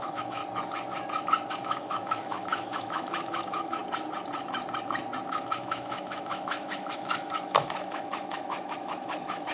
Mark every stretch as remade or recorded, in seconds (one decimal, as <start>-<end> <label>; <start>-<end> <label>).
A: 0.0-0.4 remade; 0.4-1.5 recorded; 1.5-3.8 remade; 3.8-5.3 recorded; 5.3-9.5 remade

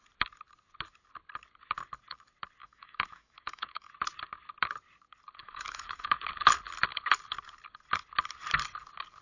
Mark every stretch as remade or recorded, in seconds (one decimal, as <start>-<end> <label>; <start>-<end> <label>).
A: 0.0-2.6 recorded; 2.6-3.9 remade; 3.9-5.4 recorded; 5.4-6.2 remade; 6.2-9.2 recorded